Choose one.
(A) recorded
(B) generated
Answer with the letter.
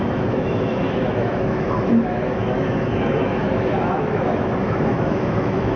B